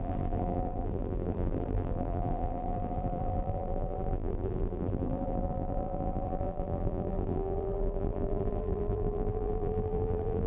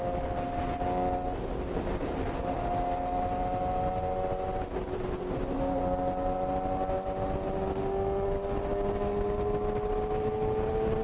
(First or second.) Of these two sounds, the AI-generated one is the first